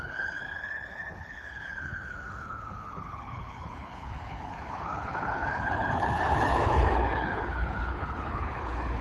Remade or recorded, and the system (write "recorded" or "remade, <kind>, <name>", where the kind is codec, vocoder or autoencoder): remade, codec, HILCodec